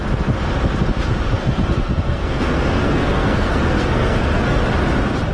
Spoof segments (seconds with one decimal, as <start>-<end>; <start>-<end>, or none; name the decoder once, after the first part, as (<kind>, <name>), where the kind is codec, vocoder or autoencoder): 1.4-4.6 (codec, SNAC)